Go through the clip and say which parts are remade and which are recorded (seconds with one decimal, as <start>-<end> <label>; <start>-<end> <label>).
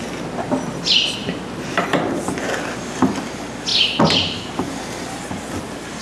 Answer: 0.0-1.2 recorded; 1.2-1.8 remade; 1.8-6.0 recorded